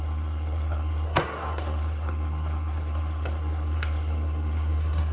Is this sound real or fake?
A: fake